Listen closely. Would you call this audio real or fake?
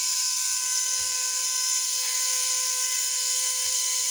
fake